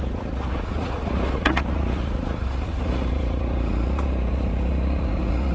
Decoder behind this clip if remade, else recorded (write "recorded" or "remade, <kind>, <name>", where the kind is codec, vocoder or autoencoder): remade, vocoder, Vocos